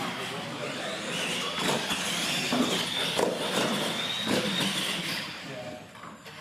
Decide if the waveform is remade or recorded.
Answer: recorded